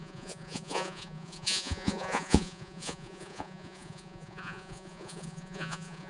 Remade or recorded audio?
remade